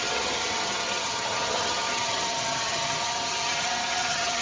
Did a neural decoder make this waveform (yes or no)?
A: yes